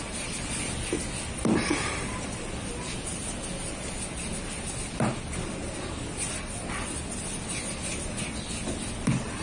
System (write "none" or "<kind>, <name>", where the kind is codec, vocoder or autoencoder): none